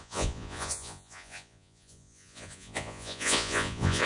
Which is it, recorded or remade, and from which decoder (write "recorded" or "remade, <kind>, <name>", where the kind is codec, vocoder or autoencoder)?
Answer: remade, vocoder, Vocos